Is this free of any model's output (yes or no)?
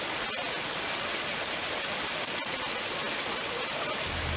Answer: yes